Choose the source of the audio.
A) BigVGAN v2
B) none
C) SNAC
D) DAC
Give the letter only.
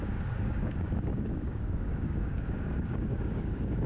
D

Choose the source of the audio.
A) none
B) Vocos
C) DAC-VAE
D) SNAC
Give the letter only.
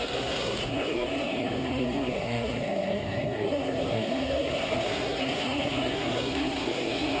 D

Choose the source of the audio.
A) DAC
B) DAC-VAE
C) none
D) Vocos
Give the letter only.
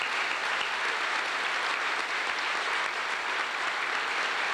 C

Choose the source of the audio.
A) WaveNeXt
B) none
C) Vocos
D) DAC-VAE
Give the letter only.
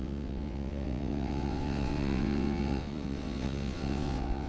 A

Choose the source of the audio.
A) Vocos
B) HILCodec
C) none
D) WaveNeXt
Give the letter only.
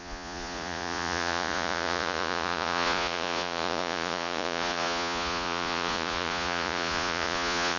A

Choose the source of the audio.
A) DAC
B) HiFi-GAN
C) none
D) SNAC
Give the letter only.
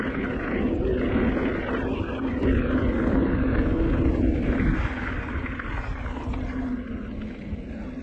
C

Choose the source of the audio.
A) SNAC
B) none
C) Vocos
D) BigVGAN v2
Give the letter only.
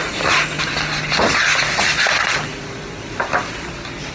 B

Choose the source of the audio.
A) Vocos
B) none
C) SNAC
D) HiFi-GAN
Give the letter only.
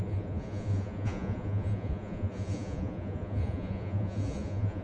A